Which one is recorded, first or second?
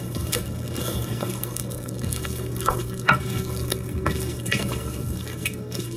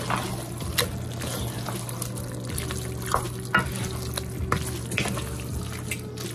second